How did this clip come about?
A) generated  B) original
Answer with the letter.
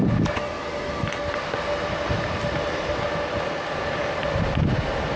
B